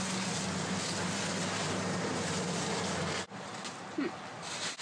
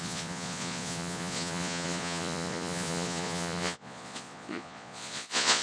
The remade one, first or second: second